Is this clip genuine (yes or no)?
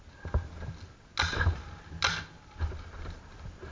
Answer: yes